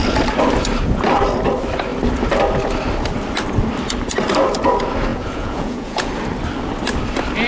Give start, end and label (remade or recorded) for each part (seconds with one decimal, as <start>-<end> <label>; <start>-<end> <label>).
0.0-5.1 recorded; 5.1-6.1 remade; 6.1-7.5 recorded